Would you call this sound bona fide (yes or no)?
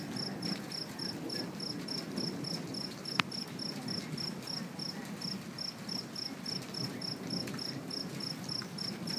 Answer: yes